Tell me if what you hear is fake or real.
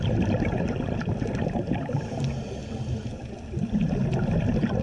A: real